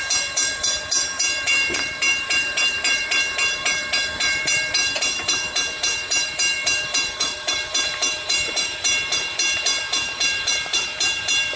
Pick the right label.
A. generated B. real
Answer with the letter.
A